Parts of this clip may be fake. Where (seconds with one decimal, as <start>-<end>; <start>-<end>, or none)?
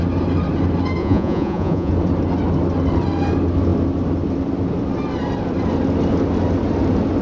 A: 1.0-1.9